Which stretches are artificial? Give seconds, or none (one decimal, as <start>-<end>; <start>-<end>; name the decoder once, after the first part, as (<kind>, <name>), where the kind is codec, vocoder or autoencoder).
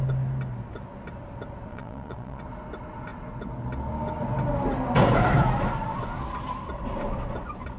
1.7-2.4 (vocoder, WaveNeXt)